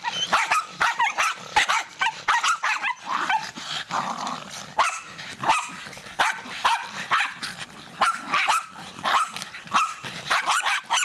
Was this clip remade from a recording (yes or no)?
yes